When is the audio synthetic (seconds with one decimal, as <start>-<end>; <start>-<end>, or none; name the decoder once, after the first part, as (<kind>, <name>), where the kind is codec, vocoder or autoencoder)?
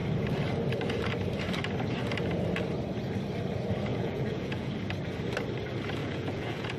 3.9-4.7 (vocoder, Vocos); 6.0-6.8